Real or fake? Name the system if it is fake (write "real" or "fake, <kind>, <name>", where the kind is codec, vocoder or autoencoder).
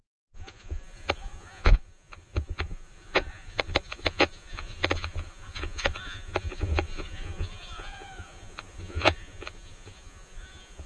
fake, vocoder, Vocos